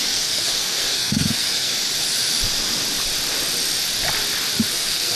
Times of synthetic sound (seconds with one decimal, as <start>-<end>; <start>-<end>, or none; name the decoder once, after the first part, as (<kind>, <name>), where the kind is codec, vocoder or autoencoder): 0.0-1.7 (codec, SNAC); 4.7-5.2